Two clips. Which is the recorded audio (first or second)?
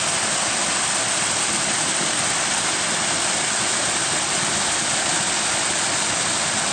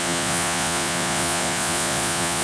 first